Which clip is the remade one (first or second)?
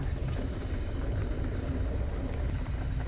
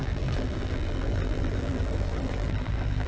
second